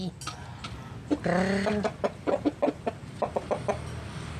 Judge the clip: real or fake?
real